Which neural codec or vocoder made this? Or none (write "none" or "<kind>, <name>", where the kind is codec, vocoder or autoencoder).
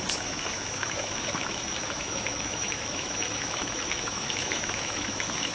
autoencoder, DAC-VAE